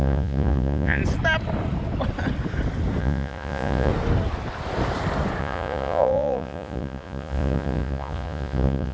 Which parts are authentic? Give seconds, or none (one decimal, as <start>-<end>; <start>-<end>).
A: 1.0-3.0; 3.9-5.4